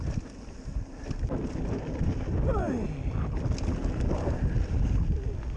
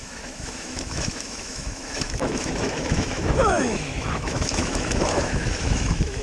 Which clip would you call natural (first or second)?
first